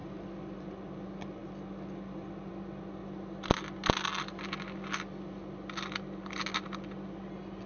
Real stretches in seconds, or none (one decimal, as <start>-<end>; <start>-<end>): 0.0-7.7